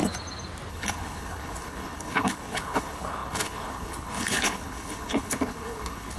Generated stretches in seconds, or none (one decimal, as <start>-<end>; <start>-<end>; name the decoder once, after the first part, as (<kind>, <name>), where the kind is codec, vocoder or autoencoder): 0.7-6.2 (codec, HILCodec)